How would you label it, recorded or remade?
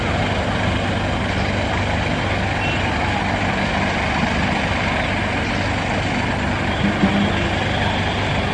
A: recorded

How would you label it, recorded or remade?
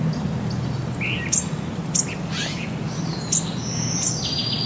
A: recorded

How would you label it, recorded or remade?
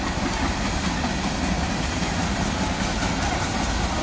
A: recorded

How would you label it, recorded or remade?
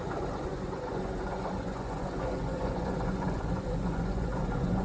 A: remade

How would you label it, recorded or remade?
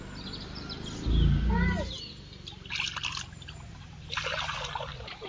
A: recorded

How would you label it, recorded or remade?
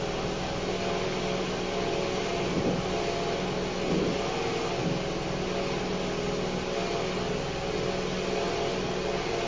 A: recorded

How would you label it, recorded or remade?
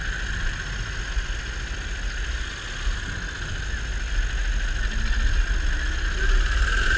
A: recorded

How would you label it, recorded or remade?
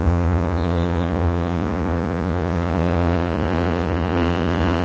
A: remade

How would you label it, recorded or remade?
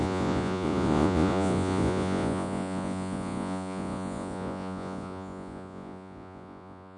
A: remade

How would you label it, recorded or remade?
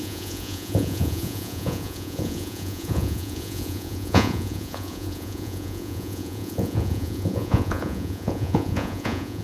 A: remade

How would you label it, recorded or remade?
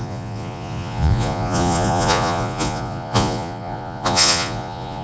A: remade